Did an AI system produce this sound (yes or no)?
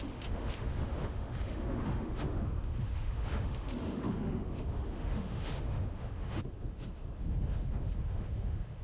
yes